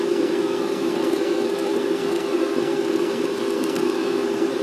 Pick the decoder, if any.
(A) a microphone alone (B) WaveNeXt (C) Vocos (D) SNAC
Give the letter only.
D